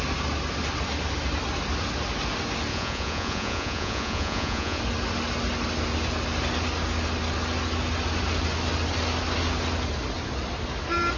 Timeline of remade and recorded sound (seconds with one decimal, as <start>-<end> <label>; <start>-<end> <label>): 0.0-2.7 recorded; 2.7-4.8 remade; 4.8-11.2 recorded